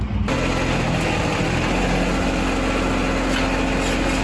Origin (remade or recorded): recorded